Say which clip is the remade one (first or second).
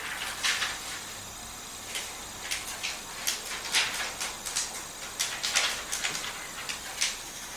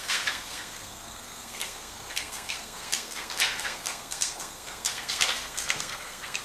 second